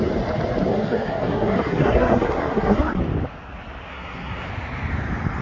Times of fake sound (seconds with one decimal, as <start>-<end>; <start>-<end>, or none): 0.7-3.0; 3.9-4.5